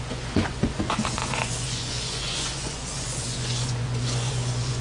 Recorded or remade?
remade